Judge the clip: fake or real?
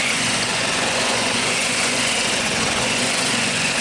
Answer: fake